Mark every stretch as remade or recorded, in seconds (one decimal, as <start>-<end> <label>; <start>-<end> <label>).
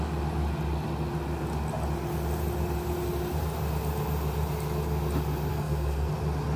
0.0-5.5 recorded; 5.5-6.1 remade; 6.1-6.6 recorded